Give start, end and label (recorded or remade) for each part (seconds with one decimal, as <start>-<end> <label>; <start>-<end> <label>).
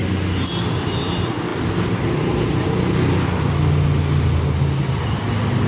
0.0-5.7 recorded